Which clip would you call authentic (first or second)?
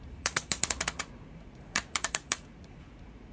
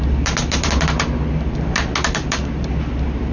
second